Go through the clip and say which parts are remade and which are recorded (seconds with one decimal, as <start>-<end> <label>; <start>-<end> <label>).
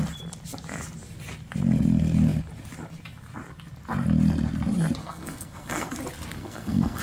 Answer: 0.0-5.0 recorded; 5.0-5.9 remade; 5.9-6.4 recorded; 6.4-7.0 remade